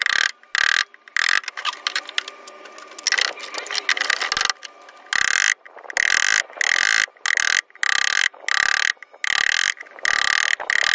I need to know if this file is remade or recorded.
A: recorded